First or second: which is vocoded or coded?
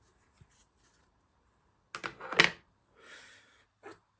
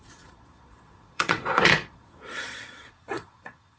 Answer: second